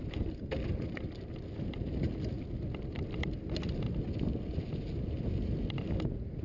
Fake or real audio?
real